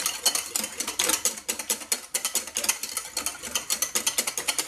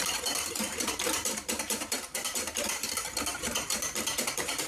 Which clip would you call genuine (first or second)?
first